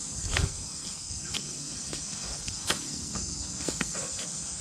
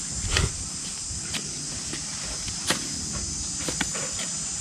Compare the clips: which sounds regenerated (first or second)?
first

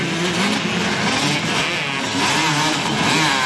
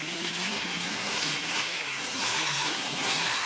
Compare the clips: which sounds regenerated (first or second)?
second